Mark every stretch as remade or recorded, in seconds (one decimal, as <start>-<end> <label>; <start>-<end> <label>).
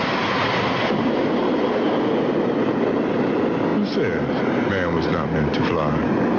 0.0-6.4 recorded